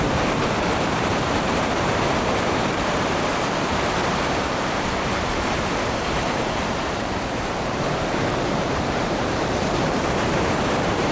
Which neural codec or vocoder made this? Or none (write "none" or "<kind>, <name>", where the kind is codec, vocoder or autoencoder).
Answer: vocoder, BigVGAN v2